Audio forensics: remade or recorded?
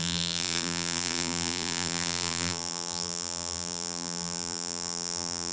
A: remade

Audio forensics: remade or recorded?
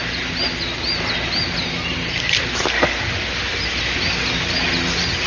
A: recorded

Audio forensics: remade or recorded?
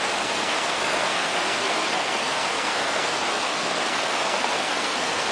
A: remade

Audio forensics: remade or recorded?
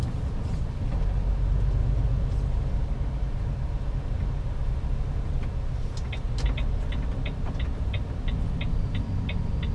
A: recorded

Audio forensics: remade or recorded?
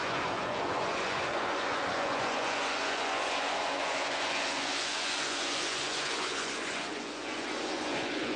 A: remade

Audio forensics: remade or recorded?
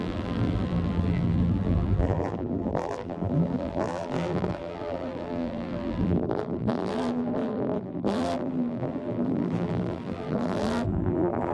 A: remade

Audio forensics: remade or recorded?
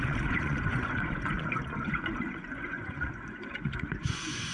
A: remade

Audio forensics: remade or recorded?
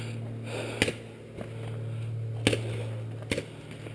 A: recorded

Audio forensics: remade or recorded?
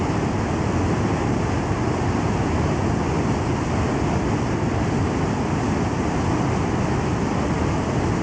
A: recorded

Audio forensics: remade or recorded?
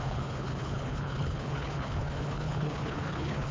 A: remade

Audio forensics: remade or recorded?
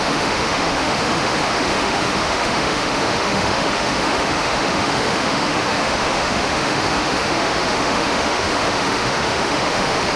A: remade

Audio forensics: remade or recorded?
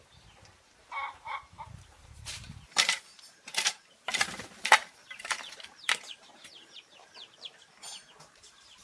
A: remade